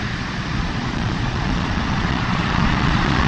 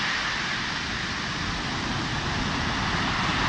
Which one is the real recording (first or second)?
second